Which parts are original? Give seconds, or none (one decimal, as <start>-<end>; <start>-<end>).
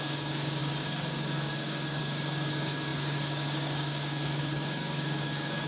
none